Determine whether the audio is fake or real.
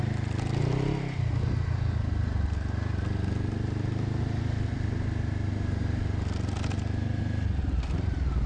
real